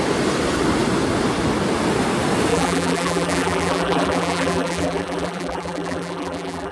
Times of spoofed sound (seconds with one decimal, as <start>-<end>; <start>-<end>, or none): 2.5-6.7

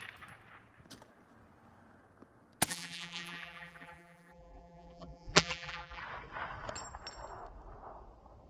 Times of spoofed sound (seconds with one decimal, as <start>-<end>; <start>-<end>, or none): 2.7-6.0

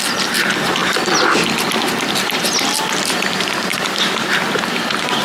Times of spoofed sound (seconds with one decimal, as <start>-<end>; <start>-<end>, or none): 0.0-0.8; 2.4-5.2

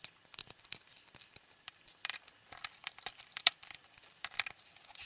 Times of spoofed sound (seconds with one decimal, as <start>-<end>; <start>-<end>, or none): 0.4-2.3; 2.8-3.8

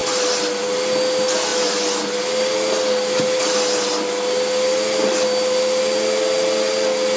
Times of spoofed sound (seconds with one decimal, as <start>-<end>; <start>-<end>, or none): 0.0-0.6; 1.5-5.8

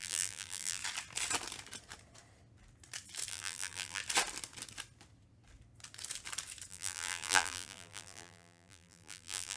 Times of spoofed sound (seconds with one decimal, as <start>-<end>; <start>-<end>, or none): 0.0-0.8; 3.3-4.0; 6.7-9.6